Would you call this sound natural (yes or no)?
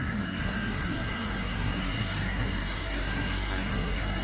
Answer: no